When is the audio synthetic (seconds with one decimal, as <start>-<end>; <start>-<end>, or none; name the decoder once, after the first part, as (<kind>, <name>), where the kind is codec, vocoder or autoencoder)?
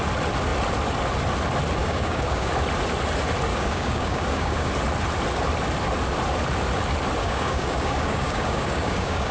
1.8-2.5 (codec, DAC); 3.5-4.7; 7.2-9.3